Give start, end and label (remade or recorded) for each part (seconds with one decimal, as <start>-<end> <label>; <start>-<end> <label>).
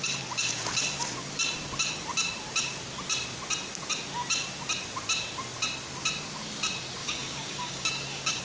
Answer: 0.0-7.0 recorded; 7.0-8.4 remade